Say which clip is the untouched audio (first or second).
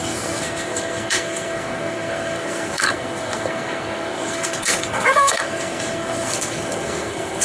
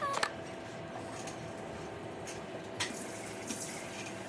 second